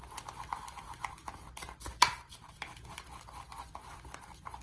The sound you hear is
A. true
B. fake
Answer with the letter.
A